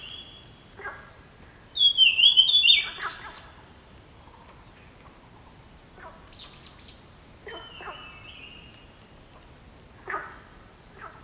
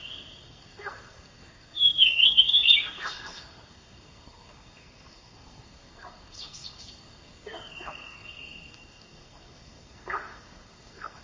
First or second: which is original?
first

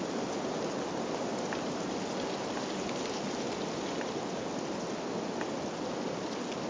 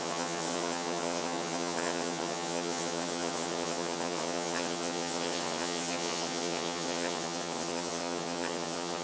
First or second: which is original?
first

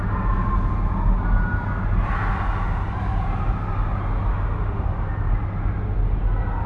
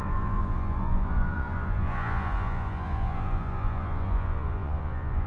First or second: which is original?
first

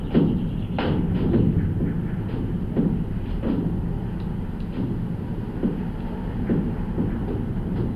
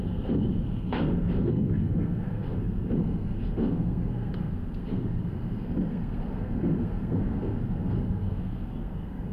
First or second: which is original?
first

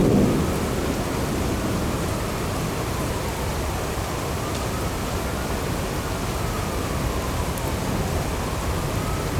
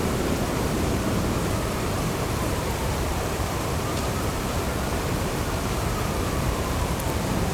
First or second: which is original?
first